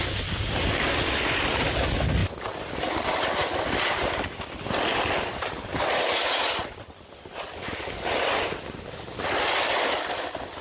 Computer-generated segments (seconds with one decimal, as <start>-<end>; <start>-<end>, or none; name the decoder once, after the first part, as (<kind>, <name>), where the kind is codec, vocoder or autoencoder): none

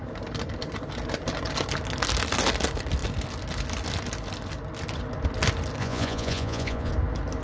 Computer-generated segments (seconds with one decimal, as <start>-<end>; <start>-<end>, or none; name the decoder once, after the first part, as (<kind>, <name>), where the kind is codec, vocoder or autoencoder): 5.8-6.9 (vocoder, Vocos)

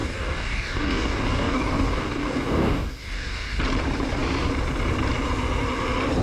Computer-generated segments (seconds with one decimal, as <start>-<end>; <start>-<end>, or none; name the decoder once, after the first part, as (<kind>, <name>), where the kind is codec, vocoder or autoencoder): 0.0-3.6 (codec, DAC)

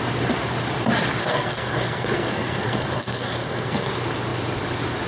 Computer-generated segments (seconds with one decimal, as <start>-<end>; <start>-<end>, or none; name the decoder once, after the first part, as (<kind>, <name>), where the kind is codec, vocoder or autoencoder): 1.2-3.9 (codec, SNAC)

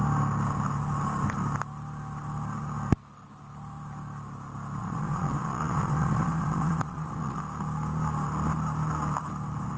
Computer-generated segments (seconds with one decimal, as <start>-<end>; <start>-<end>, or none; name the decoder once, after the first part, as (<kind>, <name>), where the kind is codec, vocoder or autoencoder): 4.8-7.4 (vocoder, Vocos)

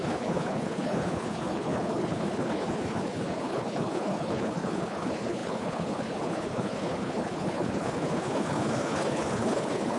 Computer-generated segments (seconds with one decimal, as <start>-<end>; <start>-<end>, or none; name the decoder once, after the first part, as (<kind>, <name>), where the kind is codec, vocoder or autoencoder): 0.0-10.0 (codec, HILCodec)

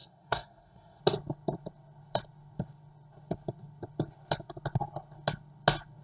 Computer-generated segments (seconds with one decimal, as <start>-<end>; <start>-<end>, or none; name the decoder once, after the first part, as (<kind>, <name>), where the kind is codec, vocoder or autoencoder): 0.0-1.0 (codec, SNAC)